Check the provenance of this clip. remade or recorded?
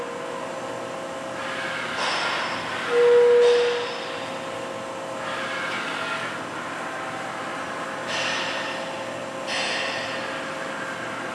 recorded